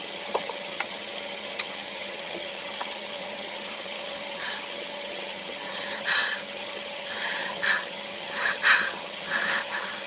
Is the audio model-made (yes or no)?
yes